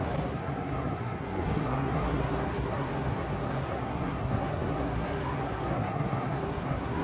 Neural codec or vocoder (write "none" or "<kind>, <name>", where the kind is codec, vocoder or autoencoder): codec, SNAC